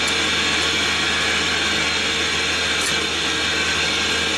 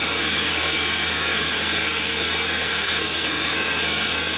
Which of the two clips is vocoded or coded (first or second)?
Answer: second